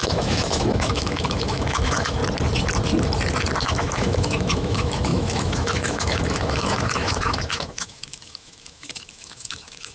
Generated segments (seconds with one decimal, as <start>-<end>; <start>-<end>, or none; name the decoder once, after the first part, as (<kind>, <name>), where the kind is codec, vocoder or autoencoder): 0.0-2.2 (autoencoder, DAC-VAE); 3.6-9.9